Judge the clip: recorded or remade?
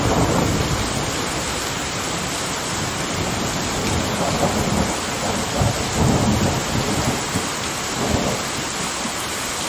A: recorded